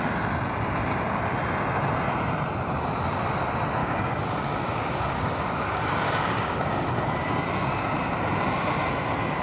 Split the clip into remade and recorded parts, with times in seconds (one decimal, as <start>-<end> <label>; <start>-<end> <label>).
0.0-3.8 recorded; 3.8-7.0 remade; 7.0-9.4 recorded